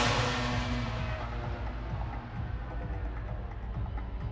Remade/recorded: recorded